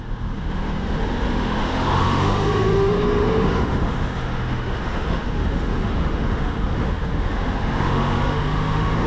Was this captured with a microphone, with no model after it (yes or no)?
no